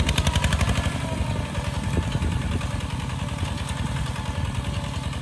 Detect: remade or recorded recorded